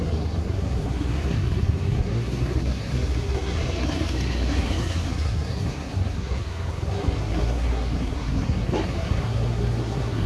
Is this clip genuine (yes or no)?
no